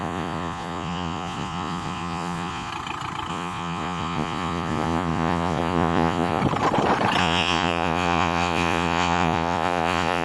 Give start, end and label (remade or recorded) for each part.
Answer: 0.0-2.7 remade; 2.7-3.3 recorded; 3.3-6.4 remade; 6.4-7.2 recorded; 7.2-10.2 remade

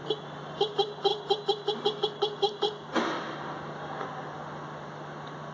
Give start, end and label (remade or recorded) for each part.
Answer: 0.0-5.5 recorded

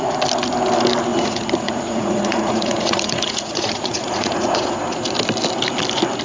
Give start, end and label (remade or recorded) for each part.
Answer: 0.0-1.1 recorded; 1.1-4.8 remade; 4.8-6.2 recorded

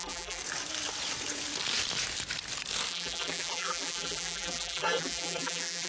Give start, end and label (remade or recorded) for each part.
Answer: 0.0-0.4 remade; 0.4-2.9 recorded; 2.9-5.9 remade

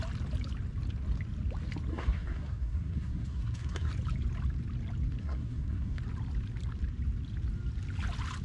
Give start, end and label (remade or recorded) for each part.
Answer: 0.0-1.9 recorded; 1.9-3.9 remade; 3.9-5.2 recorded; 5.2-6.0 remade; 6.0-8.4 recorded

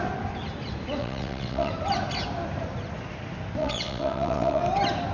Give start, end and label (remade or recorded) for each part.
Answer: 0.0-1.0 recorded; 1.0-1.7 remade; 1.7-3.6 recorded; 3.6-4.6 remade; 4.6-5.1 recorded